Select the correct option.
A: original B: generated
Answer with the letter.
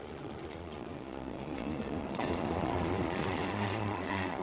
B